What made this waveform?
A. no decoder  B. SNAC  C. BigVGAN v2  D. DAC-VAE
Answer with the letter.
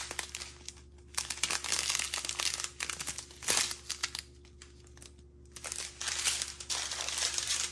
A